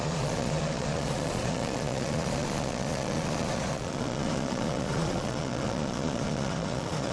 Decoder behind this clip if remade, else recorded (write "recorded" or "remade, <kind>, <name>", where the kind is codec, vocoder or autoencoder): remade, vocoder, Vocos